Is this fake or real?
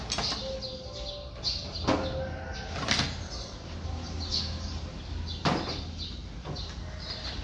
real